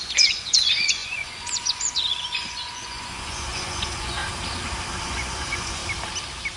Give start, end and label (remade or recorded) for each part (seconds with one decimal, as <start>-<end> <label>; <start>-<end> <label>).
0.0-4.2 remade; 4.2-5.0 recorded; 5.0-5.8 remade; 5.8-6.6 recorded